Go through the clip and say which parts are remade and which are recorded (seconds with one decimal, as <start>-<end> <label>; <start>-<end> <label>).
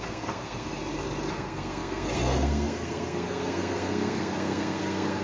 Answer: 0.0-0.8 remade; 0.8-1.3 recorded; 1.3-5.2 remade